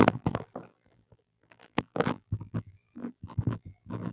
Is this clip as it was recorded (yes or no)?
no